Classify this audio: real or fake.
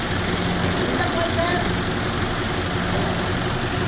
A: real